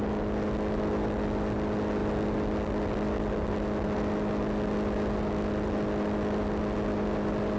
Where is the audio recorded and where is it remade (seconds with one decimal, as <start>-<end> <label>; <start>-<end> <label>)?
0.0-7.6 recorded